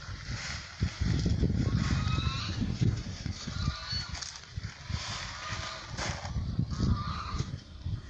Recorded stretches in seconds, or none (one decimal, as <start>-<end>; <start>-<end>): 0.0-2.4; 3.5-7.1